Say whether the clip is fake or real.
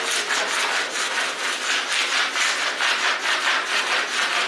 real